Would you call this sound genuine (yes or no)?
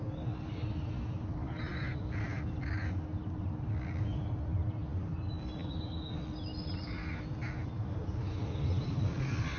yes